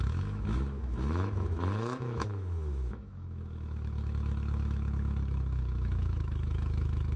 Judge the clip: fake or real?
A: fake